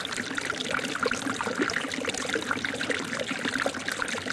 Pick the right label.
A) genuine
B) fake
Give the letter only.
A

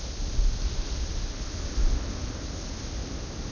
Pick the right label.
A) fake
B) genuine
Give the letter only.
B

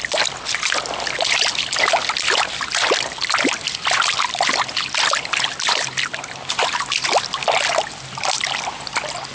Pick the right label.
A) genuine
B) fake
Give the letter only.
A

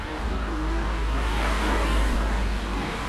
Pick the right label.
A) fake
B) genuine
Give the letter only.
A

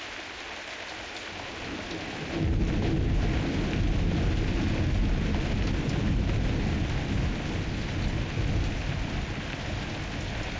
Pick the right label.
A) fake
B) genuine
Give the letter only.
B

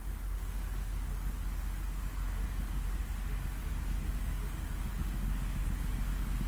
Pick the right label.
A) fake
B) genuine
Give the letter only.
A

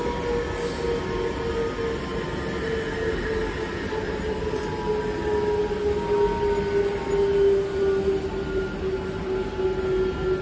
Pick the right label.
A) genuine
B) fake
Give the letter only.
A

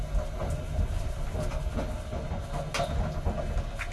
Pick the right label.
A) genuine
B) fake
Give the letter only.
A